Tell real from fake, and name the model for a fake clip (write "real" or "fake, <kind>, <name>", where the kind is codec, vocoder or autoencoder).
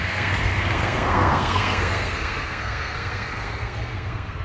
fake, codec, SNAC